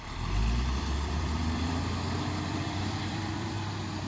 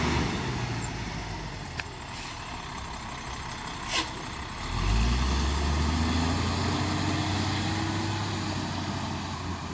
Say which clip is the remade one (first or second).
first